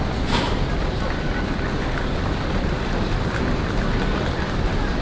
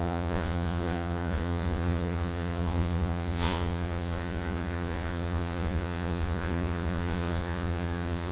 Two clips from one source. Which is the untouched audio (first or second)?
first